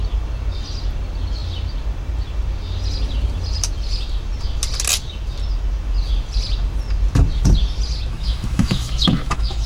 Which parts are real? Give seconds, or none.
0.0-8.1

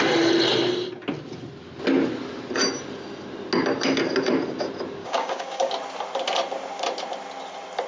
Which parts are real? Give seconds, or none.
0.0-5.0; 5.7-7.9

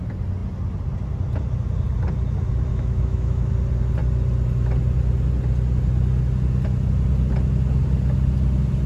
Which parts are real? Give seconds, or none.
0.0-2.7; 3.5-8.9

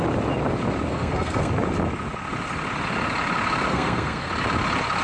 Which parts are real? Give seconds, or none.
0.0-0.9; 1.5-3.7; 4.3-5.0

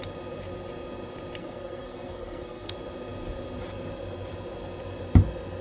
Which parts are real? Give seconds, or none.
0.0-1.4; 2.7-5.6

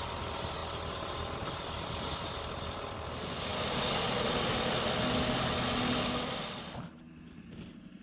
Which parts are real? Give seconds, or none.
0.0-8.0